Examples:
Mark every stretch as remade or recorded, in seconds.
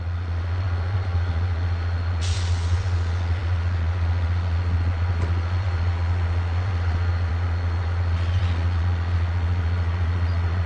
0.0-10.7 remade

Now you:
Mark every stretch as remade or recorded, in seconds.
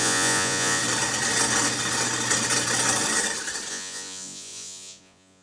0.0-0.8 remade; 0.8-3.7 recorded; 3.7-5.4 remade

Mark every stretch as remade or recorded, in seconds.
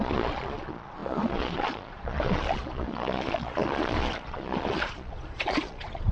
0.0-6.1 remade